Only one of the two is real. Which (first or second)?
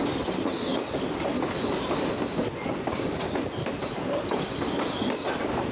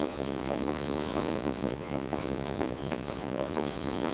first